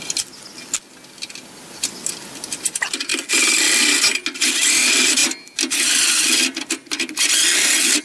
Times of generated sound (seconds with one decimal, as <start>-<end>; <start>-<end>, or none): none